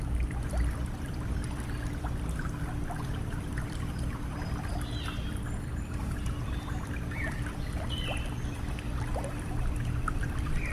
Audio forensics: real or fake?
fake